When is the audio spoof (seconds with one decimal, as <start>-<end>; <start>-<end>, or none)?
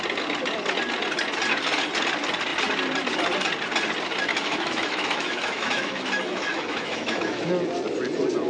4.3-7.4